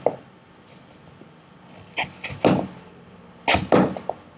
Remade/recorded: recorded